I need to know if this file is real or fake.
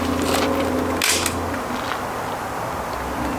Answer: real